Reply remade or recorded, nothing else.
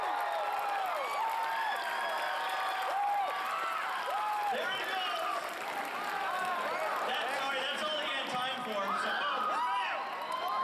recorded